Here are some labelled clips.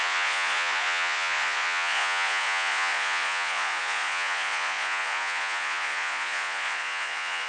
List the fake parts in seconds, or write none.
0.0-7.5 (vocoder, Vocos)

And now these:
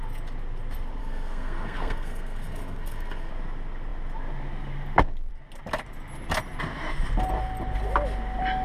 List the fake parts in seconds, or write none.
1.0-3.3 (codec, SNAC)

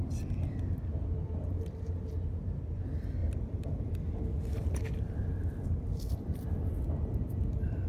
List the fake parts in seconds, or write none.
none

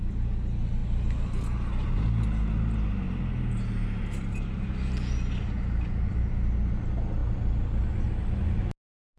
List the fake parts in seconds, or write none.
none

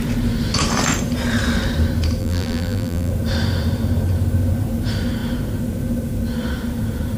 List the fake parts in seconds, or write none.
2.2-3.1 (vocoder, BigVGAN v2)

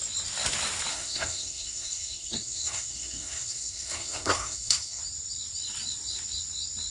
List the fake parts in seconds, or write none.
0.9-5.0 (codec, SNAC)